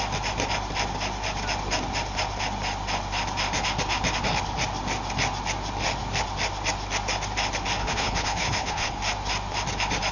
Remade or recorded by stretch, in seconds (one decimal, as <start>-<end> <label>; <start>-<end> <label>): 0.0-7.8 recorded; 7.8-9.0 remade; 9.0-10.1 recorded